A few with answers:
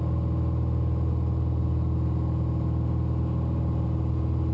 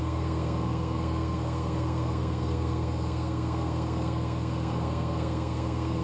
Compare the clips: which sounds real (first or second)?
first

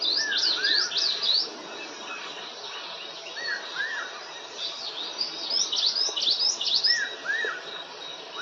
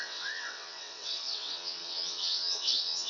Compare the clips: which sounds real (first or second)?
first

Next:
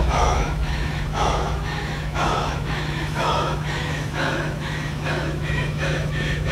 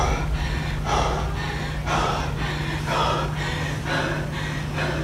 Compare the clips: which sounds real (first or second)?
second